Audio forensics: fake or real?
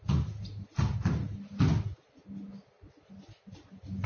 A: real